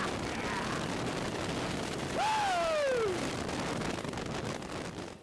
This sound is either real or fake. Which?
real